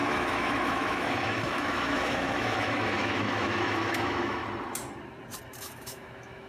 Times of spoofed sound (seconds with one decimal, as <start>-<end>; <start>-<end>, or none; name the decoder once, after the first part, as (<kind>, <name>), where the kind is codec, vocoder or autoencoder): 0.0-4.4 (autoencoder, DAC-VAE); 5.6-6.5